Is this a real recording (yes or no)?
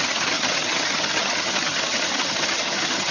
no